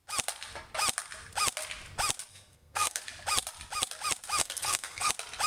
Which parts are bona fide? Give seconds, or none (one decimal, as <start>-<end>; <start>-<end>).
0.0-2.3; 3.0-4.4; 5.1-5.5